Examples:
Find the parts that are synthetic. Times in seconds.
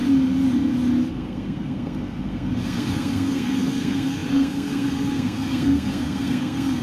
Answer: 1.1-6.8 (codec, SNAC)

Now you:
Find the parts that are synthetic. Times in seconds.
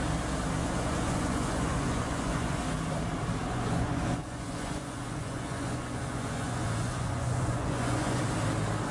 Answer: 0.6-2.6 (vocoder, Vocos); 3.4-8.2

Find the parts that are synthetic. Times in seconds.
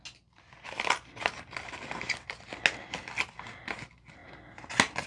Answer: none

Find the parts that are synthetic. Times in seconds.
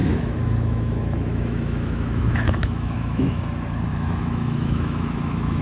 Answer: 0.0-3.4 (autoencoder, DAC-VAE); 3.9-5.6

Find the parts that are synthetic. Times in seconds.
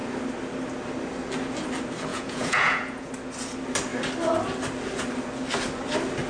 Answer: 2.1-3.1 (vocoder, Vocos)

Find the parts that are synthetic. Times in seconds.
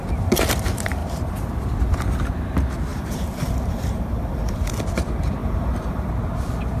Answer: 2.9-4.7 (vocoder, BigVGAN v2); 5.4-6.1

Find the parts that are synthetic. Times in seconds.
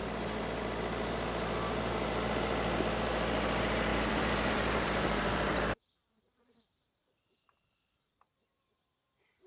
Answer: 3.9-8.2 (vocoder, BigVGAN v2)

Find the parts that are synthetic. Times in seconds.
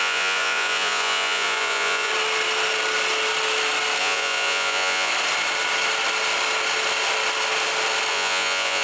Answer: 0.0-2.1 (vocoder, Vocos); 4.0-5.1; 8.1-8.8